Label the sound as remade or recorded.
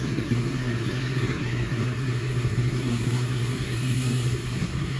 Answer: remade